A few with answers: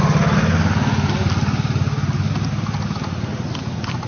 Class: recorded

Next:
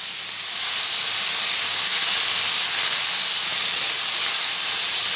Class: recorded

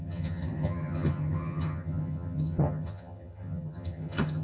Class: remade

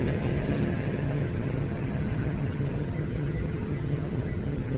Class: remade